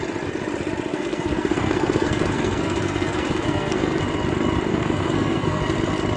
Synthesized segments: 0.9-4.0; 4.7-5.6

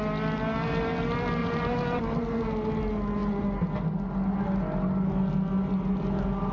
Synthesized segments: 1.4-2.0

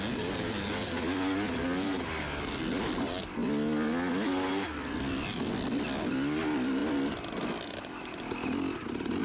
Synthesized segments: none

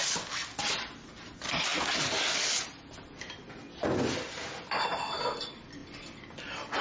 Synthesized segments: none

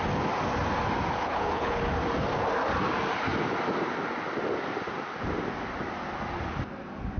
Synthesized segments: 1.2-1.8